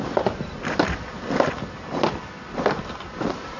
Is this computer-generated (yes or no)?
no